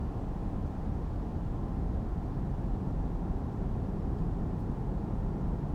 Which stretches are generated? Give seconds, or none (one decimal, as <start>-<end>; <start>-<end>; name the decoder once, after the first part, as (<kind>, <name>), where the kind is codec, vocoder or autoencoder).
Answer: 0.0-0.9 (vocoder, BigVGAN v2); 1.3-4.7